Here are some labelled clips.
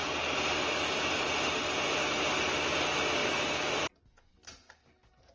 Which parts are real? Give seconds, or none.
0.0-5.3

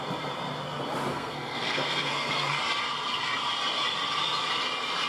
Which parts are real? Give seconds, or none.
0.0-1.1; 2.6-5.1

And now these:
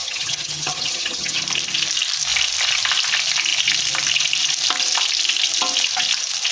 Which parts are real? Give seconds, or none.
1.4-6.5

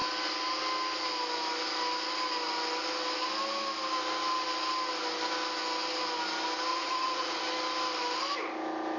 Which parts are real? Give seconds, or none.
0.0-6.7; 7.4-9.0

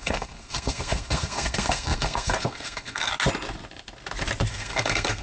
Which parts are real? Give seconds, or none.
3.1-4.5

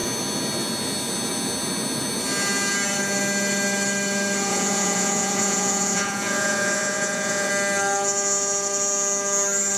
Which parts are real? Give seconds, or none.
0.0-4.5; 7.5-9.8